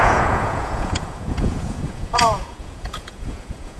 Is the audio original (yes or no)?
no